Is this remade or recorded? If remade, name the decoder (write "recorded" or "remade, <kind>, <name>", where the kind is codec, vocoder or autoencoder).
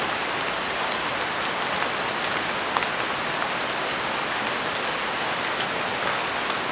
recorded